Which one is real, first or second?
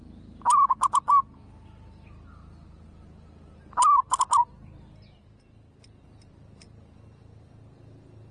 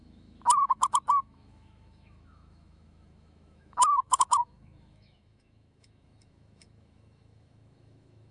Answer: first